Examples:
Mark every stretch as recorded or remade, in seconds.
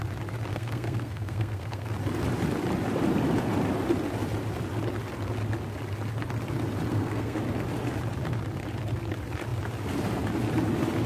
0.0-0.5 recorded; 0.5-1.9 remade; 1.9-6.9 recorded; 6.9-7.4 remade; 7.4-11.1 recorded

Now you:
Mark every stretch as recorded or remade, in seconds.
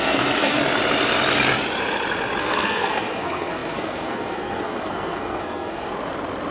0.0-0.6 remade; 0.6-2.4 recorded; 2.4-5.9 remade; 5.9-6.5 recorded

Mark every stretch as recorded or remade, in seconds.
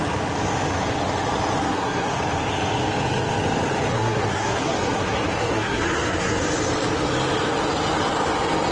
0.0-1.6 recorded; 1.6-2.1 remade; 2.1-3.9 recorded; 3.9-6.4 remade; 6.4-8.7 recorded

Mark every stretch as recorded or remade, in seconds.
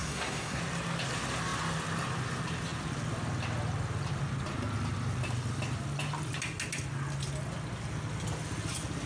0.0-0.6 remade; 0.6-9.1 recorded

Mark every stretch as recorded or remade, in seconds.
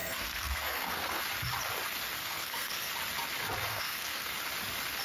0.0-1.2 remade; 1.2-2.2 recorded; 2.2-2.9 remade; 2.9-3.7 recorded; 3.7-4.3 remade; 4.3-5.0 recorded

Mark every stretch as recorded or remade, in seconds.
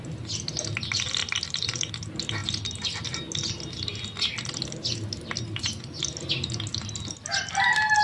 0.0-8.0 recorded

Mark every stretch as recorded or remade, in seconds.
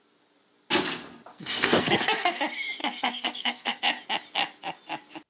0.0-1.3 recorded; 1.3-2.4 remade; 2.4-2.8 recorded; 2.8-3.8 remade; 3.8-5.3 recorded